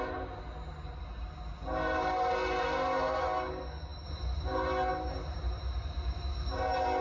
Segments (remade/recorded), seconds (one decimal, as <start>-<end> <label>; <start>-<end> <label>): 0.0-7.0 recorded